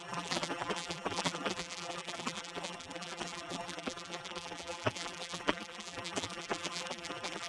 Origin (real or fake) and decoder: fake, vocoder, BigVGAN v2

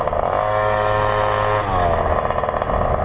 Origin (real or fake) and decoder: real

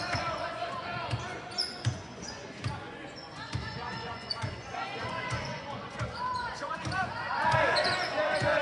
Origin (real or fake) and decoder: fake, vocoder, Vocos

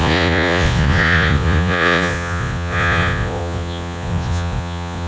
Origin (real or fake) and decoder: fake, vocoder, Vocos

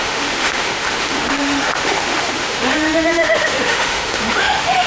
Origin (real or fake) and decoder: fake, autoencoder, DAC-VAE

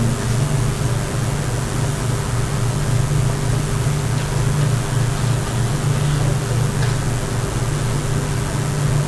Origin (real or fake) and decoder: real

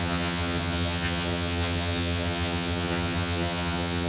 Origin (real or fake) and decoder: fake, vocoder, HiFi-GAN